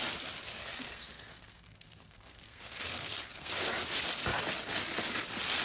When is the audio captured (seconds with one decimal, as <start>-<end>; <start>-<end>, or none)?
0.0-0.6; 3.6-5.6

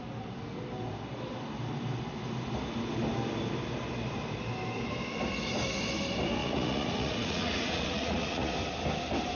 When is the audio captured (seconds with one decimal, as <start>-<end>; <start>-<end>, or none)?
0.0-6.4; 8.5-9.4

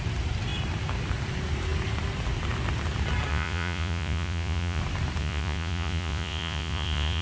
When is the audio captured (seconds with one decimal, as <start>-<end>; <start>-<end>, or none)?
0.0-3.3; 4.8-5.2

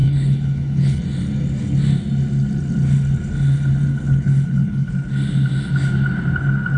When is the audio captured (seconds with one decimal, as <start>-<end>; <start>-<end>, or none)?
1.0-3.9; 4.9-6.8

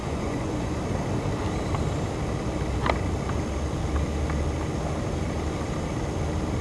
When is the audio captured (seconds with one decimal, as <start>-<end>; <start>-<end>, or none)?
0.8-6.6

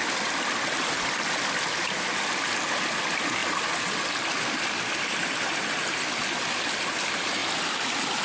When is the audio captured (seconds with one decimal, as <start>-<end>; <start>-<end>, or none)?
0.0-3.4; 4.9-8.2